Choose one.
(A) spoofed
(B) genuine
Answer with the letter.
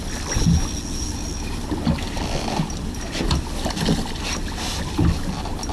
B